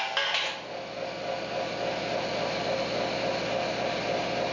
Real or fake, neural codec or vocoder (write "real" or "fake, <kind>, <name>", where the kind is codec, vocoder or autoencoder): real